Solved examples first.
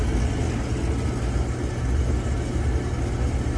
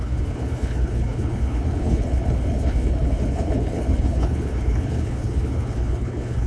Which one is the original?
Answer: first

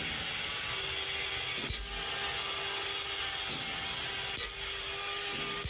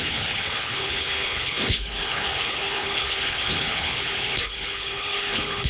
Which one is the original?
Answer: first